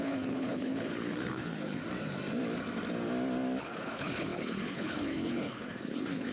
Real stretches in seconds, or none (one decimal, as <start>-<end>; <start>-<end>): 1.8-3.6